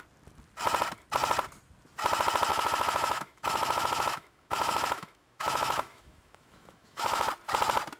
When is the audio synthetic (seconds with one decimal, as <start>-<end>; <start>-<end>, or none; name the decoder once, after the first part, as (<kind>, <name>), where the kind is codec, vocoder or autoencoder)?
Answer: 2.5-7.3 (autoencoder, DAC-VAE)